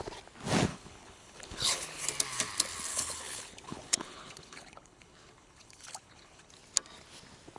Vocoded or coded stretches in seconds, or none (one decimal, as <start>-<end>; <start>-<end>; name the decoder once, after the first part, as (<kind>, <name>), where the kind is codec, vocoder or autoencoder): 0.7-2.0 (codec, HILCodec); 2.9-6.5